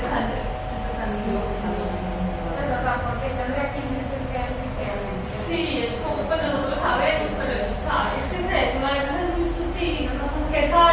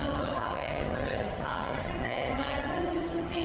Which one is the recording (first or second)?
first